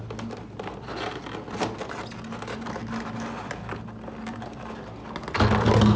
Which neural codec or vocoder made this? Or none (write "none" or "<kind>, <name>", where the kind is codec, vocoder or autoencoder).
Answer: none